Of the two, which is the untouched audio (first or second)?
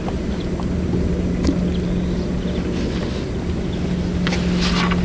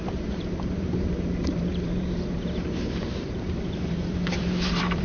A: first